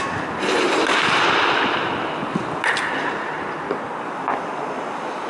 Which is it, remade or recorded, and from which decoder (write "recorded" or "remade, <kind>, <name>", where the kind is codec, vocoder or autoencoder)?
recorded